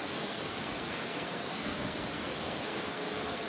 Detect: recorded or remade remade